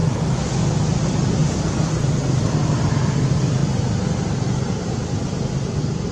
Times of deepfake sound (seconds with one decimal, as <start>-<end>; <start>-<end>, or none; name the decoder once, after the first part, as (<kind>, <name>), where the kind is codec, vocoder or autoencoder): none

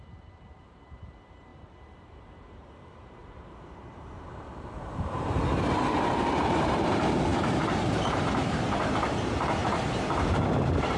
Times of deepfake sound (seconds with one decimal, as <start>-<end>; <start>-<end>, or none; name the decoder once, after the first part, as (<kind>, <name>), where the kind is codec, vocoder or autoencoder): 0.0-11.0 (vocoder, BigVGAN v2)

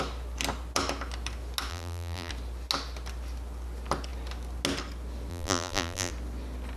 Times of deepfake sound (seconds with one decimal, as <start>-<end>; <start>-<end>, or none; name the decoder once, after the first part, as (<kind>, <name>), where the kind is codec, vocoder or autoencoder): 1.7-2.3 (vocoder, BigVGAN v2); 5.3-6.1

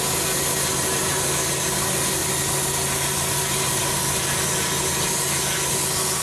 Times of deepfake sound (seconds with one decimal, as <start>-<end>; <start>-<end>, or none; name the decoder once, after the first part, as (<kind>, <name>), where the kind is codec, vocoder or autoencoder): none